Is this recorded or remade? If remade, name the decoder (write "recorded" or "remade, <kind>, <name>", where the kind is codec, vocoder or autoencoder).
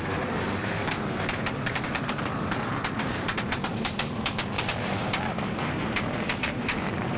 remade, vocoder, BigVGAN v2